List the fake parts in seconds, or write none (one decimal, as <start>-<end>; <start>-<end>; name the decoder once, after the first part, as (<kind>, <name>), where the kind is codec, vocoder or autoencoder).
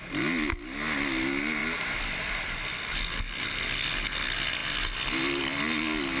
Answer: 1.6-2.9 (vocoder, BigVGAN v2)